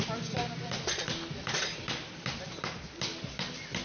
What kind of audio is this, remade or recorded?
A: recorded